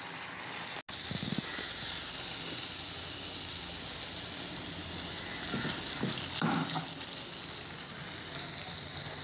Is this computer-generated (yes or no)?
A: no